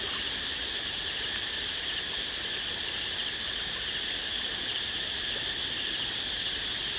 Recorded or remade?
recorded